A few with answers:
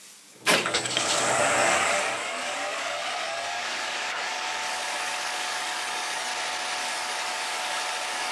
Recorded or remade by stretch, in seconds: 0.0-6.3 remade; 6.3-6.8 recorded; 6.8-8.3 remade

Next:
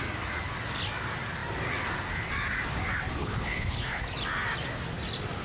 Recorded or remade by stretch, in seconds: 0.0-3.2 recorded; 3.2-4.0 remade; 4.0-5.4 recorded

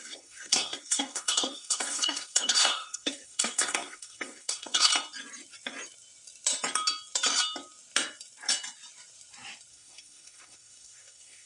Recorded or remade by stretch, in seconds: 0.0-4.9 remade; 4.9-9.7 recorded; 9.7-11.5 remade

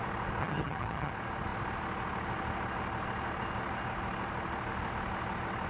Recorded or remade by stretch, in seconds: 0.0-0.4 recorded; 0.4-1.1 remade; 1.1-5.7 recorded

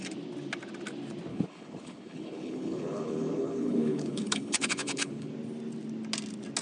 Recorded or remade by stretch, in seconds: 0.0-1.3 recorded; 1.3-5.3 remade; 5.3-6.6 recorded